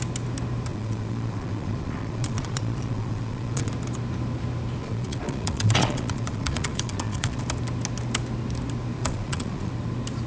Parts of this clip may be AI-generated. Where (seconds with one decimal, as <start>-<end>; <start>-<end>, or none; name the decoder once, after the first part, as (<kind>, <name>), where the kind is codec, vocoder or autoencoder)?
0.7-3.7 (vocoder, Vocos); 4.8-7.4; 9.0-9.7